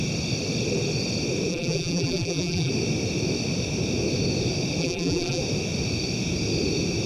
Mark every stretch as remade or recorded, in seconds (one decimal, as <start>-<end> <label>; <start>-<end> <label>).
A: 0.0-1.5 recorded; 1.5-2.7 remade; 2.7-4.8 recorded; 4.8-5.4 remade; 5.4-7.1 recorded